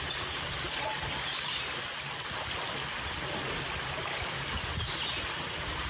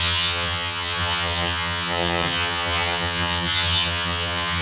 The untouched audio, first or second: first